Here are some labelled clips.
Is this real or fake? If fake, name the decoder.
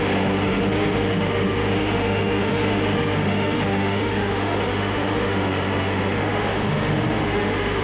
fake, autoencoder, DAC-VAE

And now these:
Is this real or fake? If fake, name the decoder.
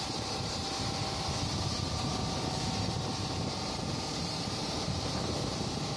fake, vocoder, BigVGAN v2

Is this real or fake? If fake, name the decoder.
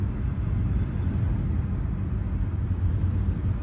real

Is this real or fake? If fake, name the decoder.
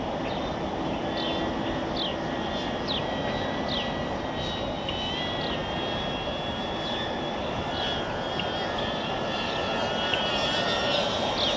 real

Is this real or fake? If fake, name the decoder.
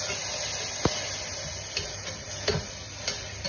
real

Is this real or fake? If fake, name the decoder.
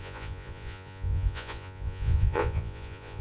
fake, vocoder, Vocos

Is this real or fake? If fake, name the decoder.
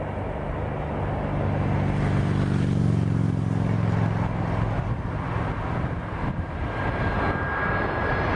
real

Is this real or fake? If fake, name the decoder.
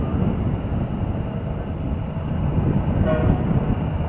real